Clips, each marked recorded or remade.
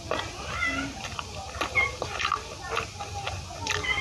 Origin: recorded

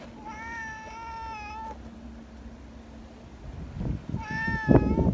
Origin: recorded